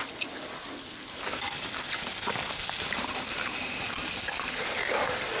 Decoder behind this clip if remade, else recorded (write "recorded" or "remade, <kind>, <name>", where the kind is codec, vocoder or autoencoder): recorded